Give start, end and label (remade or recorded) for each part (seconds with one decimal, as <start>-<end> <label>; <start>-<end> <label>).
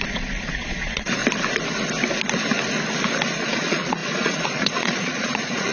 0.0-1.2 remade; 1.2-3.4 recorded; 3.4-5.7 remade